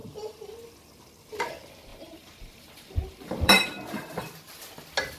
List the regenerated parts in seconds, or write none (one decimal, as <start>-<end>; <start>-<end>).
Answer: 1.9-4.2